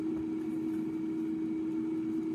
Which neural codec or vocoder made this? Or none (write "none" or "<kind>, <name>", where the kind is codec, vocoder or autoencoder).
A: none